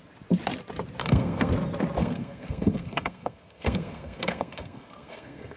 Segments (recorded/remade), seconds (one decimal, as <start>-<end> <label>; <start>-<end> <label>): 0.0-1.0 recorded; 1.0-1.5 remade; 1.5-2.0 recorded; 2.0-5.6 remade